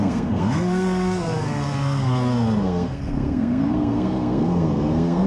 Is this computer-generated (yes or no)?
yes